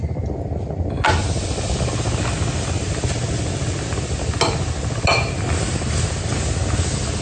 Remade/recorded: recorded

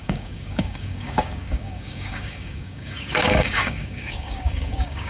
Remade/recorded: remade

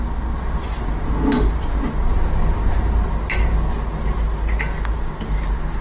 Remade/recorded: recorded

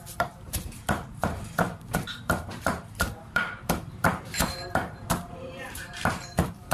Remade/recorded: remade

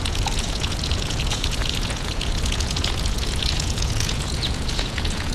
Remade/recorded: remade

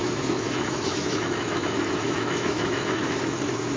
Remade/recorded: remade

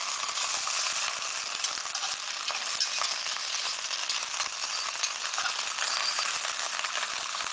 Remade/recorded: recorded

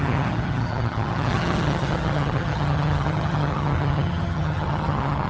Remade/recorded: remade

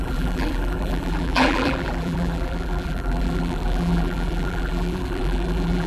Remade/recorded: remade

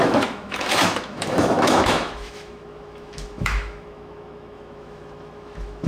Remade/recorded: remade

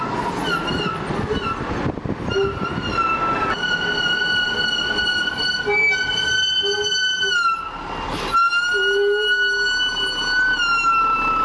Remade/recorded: recorded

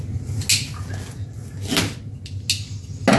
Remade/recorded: recorded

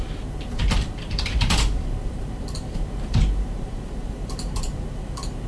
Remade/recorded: remade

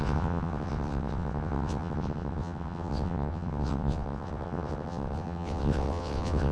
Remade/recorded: remade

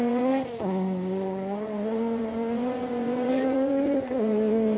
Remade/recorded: remade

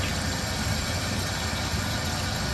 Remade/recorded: recorded